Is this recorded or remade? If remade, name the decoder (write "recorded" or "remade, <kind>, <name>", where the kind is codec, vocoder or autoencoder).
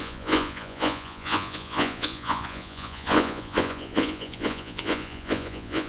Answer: remade, vocoder, Vocos